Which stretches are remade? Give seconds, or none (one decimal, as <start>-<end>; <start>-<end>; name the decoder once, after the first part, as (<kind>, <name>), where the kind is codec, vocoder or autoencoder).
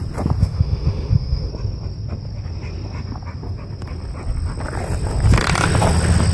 0.4-1.5 (autoencoder, DAC-VAE)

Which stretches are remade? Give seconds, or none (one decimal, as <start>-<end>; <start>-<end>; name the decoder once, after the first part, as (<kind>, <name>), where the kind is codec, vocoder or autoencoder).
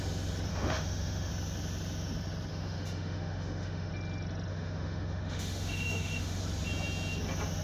0.5-1.3 (autoencoder, DAC-VAE); 2.5-3.9; 4.5-6.4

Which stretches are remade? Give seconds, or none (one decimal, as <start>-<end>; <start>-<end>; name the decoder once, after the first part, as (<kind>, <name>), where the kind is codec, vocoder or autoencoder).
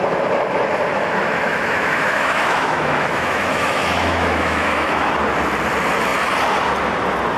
0.9-5.1 (autoencoder, DAC-VAE)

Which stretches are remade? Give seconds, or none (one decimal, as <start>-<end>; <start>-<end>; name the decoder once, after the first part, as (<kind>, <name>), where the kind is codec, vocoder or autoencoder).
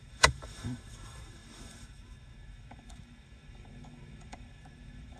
0.0-5.2 (autoencoder, DAC-VAE)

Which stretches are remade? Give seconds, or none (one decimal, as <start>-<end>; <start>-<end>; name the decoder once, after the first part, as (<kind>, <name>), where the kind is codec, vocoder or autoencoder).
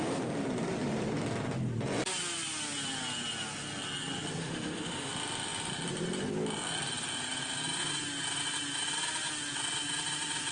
4.4-5.1 (autoencoder, DAC-VAE)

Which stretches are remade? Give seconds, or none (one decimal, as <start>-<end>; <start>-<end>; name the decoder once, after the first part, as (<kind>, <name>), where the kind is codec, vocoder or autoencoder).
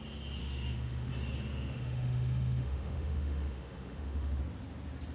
0.4-1.1 (autoencoder, DAC-VAE); 1.5-4.4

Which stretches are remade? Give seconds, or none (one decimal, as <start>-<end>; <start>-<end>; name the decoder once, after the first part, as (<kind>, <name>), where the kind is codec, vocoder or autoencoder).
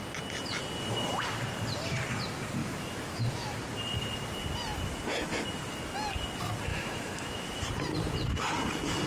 2.6-3.6 (autoencoder, DAC-VAE); 6.7-7.6